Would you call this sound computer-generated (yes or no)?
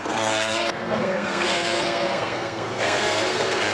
yes